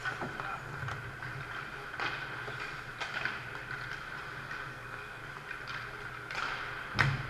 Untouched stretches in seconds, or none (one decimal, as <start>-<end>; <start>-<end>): 0.0-4.7; 5.2-7.3